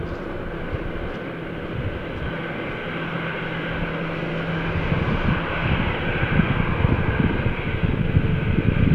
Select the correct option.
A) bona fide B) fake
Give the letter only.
A